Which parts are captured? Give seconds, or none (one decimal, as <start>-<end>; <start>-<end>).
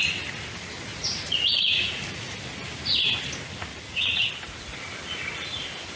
0.0-0.9; 2.3-3.7; 4.3-6.0